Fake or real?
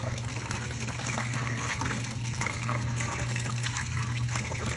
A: fake